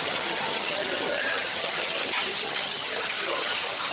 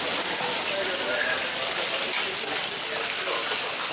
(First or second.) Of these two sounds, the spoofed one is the first